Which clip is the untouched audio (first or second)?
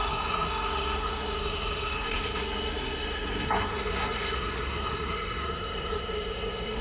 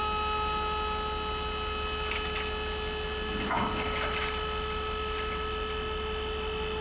second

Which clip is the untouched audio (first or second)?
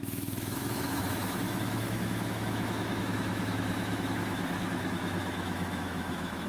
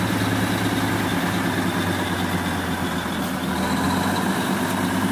second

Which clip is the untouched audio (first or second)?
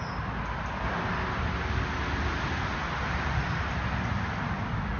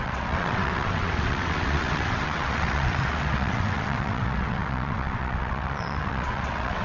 first